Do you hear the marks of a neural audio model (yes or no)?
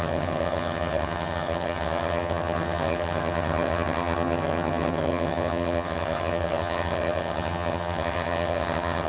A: yes